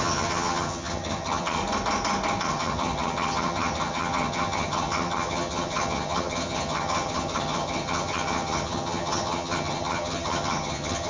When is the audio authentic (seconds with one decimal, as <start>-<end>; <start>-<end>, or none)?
1.6-2.4